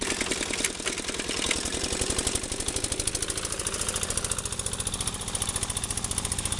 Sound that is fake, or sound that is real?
real